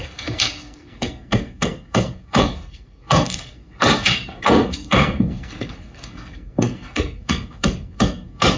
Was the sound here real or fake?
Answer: fake